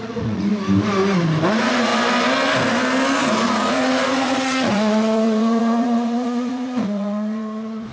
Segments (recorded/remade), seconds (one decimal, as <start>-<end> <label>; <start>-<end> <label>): 0.0-0.5 remade; 0.5-1.5 recorded; 1.5-1.9 remade; 1.9-3.2 recorded; 3.2-7.9 remade